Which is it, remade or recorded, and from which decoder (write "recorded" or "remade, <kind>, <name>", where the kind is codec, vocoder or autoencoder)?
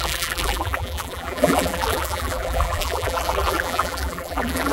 remade, vocoder, BigVGAN v2